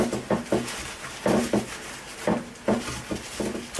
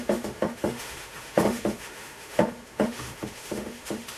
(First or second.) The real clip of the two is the first